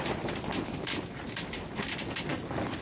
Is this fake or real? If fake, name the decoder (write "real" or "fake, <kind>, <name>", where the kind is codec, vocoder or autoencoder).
real